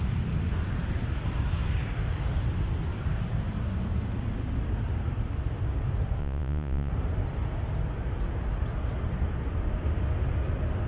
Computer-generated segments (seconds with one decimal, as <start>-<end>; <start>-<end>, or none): 6.2-6.9